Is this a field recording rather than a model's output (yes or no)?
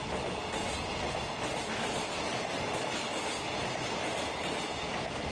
yes